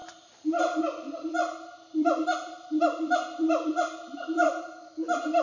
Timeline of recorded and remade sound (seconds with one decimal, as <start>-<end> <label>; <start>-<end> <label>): 0.0-1.4 recorded; 1.4-4.6 remade; 4.6-5.4 recorded